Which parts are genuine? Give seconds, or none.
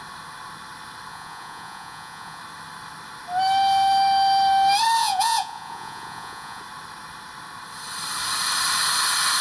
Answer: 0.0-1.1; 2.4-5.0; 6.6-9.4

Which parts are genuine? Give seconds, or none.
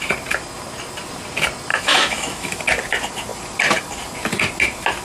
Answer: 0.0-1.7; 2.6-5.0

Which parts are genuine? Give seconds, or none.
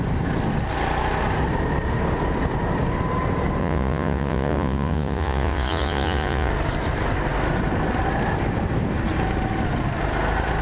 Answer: 0.0-3.6; 6.5-10.6